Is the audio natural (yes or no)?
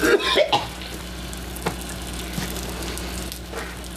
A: yes